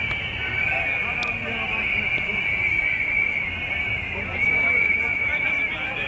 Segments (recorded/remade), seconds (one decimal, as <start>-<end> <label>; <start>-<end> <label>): 0.0-6.1 recorded